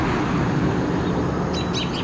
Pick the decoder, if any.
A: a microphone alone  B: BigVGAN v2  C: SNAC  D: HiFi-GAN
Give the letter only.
A